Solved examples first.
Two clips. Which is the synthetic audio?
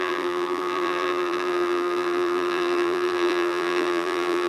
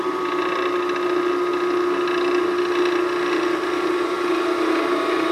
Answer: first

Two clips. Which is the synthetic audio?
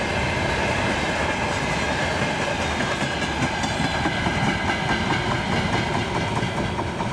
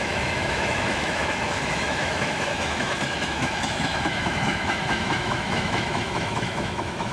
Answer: second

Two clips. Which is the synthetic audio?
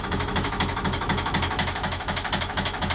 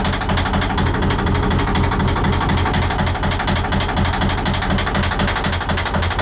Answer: first